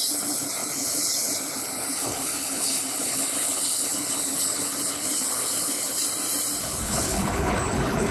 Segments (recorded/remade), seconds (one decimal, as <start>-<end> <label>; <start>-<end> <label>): 0.0-6.0 remade; 6.0-6.6 recorded; 6.6-8.1 remade